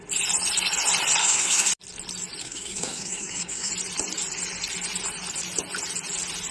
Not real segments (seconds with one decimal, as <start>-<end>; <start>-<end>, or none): 1.2-1.7; 2.4-3.7